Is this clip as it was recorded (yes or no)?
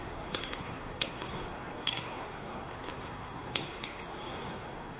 no